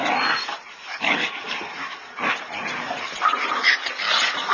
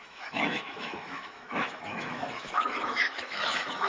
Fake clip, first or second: second